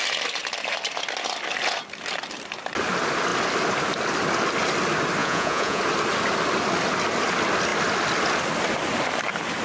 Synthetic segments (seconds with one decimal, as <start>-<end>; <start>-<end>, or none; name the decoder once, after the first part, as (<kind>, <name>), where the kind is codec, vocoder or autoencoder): 5.2-5.8 (vocoder, Vocos)

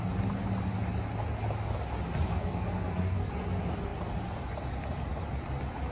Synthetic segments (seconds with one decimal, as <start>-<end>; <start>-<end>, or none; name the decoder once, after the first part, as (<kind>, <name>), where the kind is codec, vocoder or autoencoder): 2.3-3.3 (codec, SNAC)

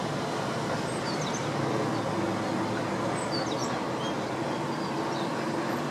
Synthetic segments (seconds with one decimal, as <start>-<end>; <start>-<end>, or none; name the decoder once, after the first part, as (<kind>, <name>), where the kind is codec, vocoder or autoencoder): none

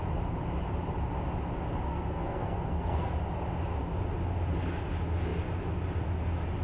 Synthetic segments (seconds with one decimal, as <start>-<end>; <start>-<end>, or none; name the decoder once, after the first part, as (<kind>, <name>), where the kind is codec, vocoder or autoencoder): 1.9-3.1 (codec, SNAC)

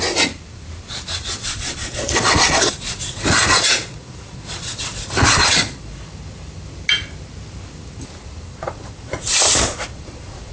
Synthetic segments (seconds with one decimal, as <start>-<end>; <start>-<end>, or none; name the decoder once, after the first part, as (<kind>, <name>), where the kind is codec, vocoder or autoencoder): 1.4-6.0 (vocoder, Vocos); 8.5-10.5

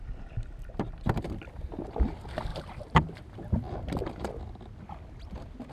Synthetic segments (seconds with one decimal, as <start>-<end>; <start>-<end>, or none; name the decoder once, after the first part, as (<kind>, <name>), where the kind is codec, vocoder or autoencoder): 2.5-3.2 (vocoder, BigVGAN v2)